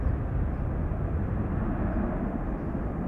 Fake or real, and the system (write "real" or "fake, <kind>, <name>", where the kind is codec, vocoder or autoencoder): real